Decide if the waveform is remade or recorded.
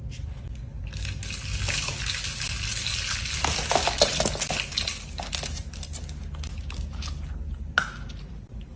recorded